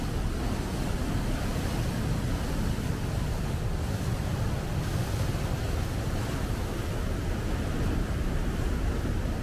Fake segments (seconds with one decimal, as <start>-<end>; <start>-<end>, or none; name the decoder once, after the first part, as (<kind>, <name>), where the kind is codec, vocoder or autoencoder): none